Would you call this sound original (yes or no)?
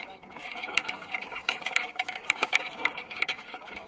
no